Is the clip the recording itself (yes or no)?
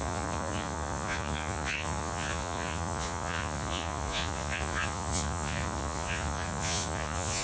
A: no